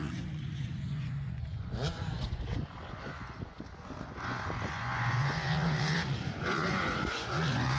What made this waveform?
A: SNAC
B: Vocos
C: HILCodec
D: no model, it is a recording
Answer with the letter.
B